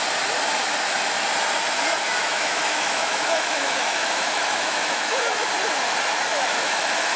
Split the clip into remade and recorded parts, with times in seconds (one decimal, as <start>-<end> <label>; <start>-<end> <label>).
0.0-2.2 recorded; 2.2-5.5 remade; 5.5-6.3 recorded; 6.3-7.2 remade